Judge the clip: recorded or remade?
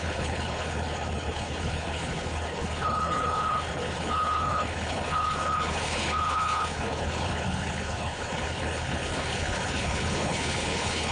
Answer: remade